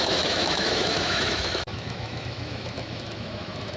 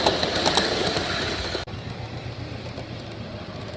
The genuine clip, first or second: second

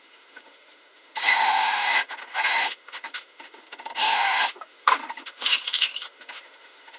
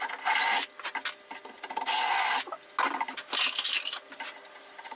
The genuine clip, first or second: second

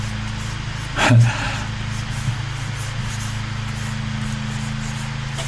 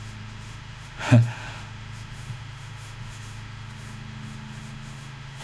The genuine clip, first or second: first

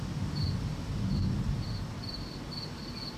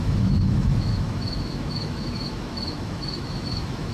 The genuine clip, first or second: first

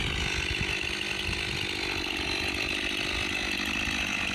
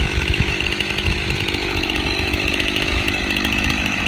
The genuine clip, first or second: first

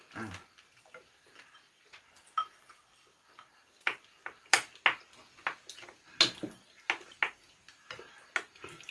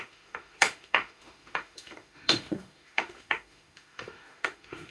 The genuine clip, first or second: first